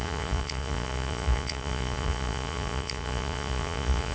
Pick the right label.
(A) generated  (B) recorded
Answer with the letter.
A